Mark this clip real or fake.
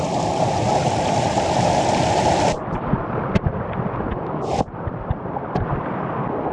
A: real